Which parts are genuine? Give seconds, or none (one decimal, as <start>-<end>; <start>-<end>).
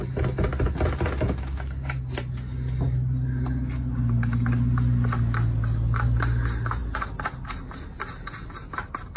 0.0-9.2